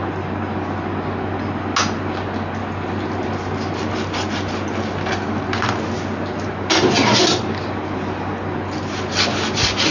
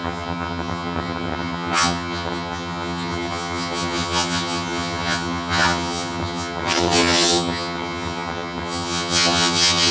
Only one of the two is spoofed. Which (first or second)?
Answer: second